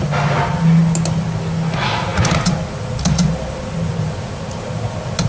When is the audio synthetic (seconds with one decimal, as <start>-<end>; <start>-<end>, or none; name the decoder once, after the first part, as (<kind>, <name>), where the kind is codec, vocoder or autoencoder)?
none

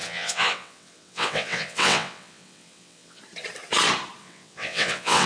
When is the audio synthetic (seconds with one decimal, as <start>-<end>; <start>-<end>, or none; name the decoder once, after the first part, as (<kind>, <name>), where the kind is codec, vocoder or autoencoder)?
0.0-3.2 (vocoder, WaveNeXt); 4.2-5.3

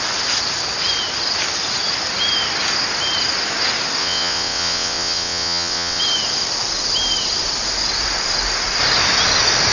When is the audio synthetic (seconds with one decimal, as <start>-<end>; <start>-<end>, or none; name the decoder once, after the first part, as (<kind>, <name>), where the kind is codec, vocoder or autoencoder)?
4.0-6.0 (vocoder, WaveNeXt)

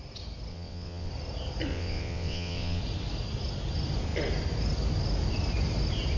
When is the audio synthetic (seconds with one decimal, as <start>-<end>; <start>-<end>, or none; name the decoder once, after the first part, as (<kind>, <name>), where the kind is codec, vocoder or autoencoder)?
0.5-1.1 (vocoder, WaveNeXt); 1.7-2.8